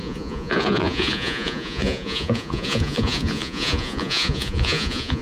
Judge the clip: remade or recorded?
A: remade